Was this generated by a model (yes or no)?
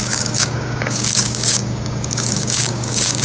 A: yes